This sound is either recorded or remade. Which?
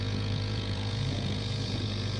remade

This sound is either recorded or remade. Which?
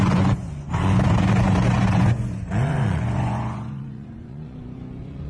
remade